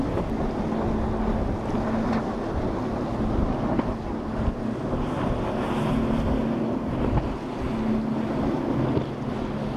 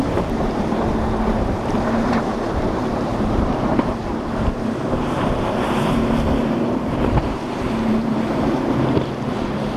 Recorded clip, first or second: first